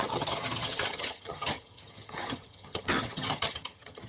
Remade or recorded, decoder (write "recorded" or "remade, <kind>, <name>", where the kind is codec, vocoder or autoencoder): remade, vocoder, HiFi-GAN